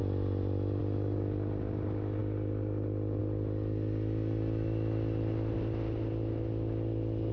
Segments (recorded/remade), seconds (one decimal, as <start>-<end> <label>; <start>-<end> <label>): 0.0-7.3 recorded